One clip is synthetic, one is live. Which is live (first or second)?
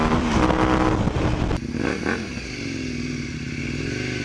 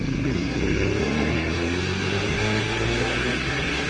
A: first